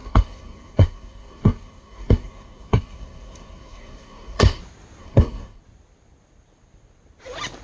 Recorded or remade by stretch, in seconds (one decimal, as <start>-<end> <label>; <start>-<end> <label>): 0.0-4.6 remade; 4.6-5.0 recorded; 5.0-5.6 remade; 5.6-7.6 recorded